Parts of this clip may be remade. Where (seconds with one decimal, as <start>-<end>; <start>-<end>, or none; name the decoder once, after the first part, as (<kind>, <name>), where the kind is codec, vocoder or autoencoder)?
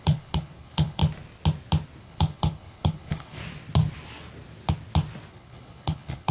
0.0-1.0 (codec, HILCodec); 2.0-3.4; 5.3-6.3